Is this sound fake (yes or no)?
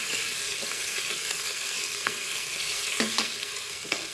yes